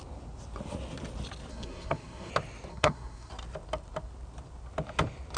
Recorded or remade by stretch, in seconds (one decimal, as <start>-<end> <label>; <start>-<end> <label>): 0.0-1.5 recorded; 1.5-2.3 remade; 2.3-2.7 recorded; 2.7-3.3 remade; 3.3-5.4 recorded